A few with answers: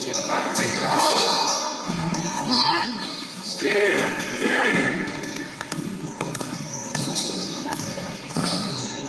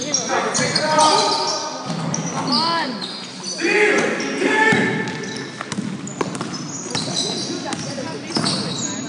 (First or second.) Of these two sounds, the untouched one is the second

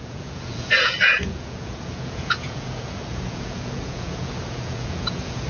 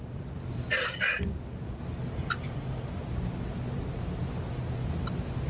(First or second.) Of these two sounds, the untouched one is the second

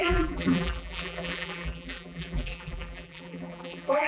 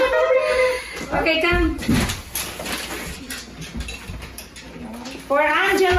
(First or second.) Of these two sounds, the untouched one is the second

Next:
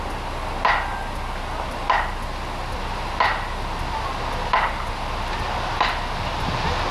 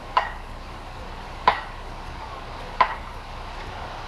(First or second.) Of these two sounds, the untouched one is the first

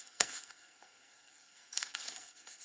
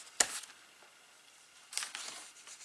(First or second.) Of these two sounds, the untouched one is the second